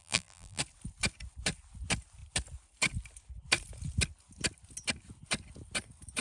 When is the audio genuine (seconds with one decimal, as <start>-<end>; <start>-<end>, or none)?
0.6-6.2